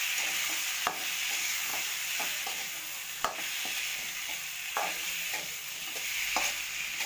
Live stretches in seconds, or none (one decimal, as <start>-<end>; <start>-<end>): 0.0-1.7; 2.3-3.9; 5.7-7.1